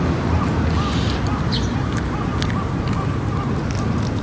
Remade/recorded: recorded